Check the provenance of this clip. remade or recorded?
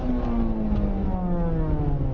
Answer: recorded